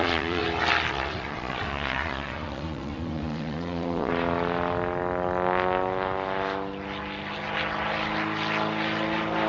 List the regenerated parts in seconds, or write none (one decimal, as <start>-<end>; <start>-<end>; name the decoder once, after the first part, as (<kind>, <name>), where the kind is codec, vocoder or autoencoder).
0.0-0.4 (vocoder, Vocos); 0.9-4.1